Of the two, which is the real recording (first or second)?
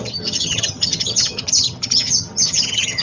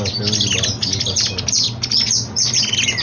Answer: second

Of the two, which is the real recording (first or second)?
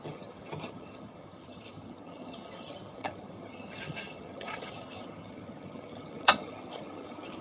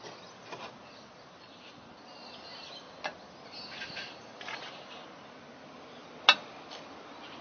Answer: second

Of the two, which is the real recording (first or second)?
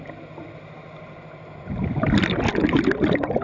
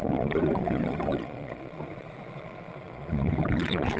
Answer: first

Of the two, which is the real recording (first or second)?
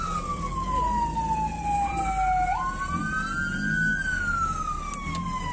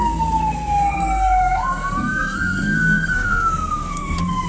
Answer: first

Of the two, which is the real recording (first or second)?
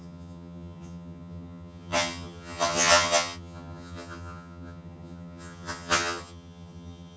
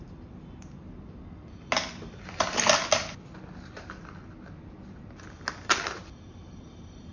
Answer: second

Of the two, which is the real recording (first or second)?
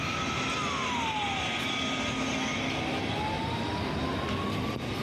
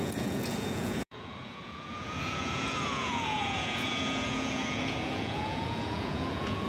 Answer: first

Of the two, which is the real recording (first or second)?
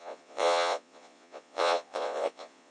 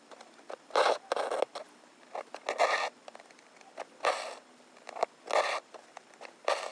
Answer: second